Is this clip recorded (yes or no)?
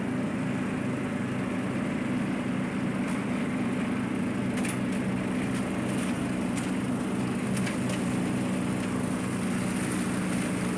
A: yes